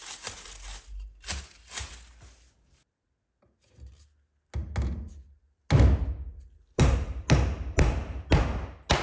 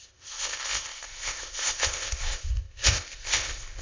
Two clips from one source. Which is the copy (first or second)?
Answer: second